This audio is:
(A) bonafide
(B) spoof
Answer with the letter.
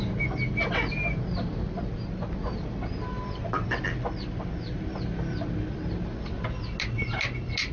A